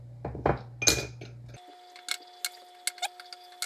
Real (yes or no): yes